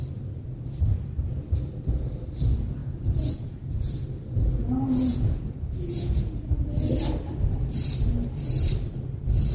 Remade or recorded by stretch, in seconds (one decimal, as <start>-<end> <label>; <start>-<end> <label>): 0.0-2.8 recorded; 2.8-3.9 remade; 3.9-5.1 recorded; 5.1-6.9 remade; 6.9-9.5 recorded